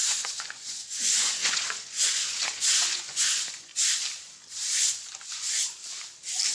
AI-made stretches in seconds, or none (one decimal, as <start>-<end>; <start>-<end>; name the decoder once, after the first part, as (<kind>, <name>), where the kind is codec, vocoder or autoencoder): 0.0-3.7 (vocoder, Vocos); 4.5-5.7